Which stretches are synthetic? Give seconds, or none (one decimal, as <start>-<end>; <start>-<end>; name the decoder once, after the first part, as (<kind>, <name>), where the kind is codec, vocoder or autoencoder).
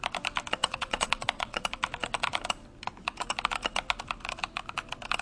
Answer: 0.6-1.6 (vocoder, WaveNeXt)